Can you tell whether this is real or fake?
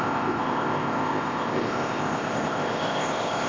fake